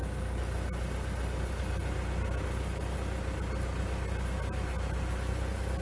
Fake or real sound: real